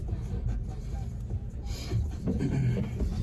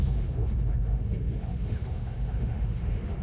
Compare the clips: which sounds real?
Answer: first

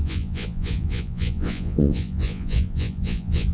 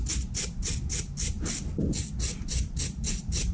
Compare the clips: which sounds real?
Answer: second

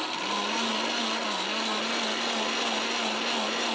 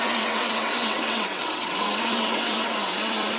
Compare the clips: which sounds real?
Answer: first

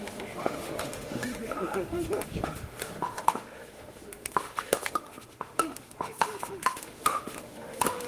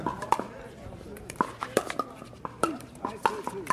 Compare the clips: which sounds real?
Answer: second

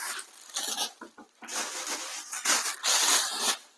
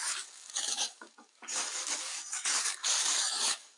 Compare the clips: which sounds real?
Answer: first